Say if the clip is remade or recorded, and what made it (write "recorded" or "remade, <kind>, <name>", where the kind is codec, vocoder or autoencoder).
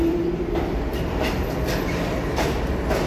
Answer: recorded